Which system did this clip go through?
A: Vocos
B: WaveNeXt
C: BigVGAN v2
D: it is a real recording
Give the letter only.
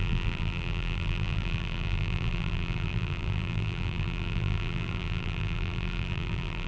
C